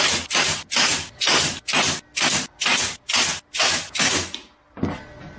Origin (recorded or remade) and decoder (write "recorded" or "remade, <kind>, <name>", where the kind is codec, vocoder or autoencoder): recorded